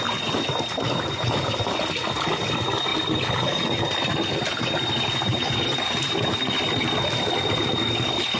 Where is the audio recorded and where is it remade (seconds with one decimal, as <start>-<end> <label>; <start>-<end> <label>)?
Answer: 0.0-8.4 recorded